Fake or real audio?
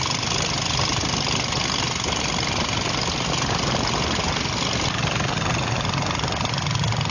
real